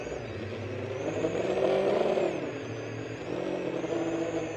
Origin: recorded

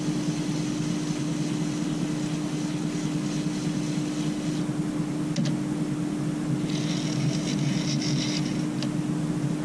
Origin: recorded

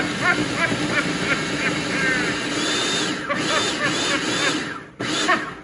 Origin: recorded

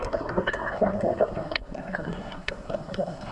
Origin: remade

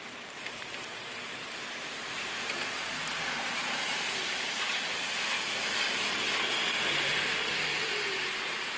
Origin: remade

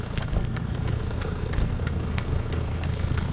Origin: remade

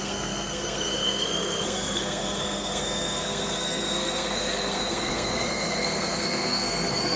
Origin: remade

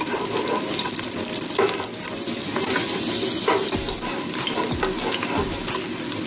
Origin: recorded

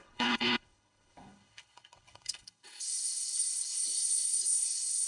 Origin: remade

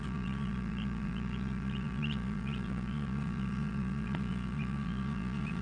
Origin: remade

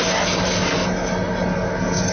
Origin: recorded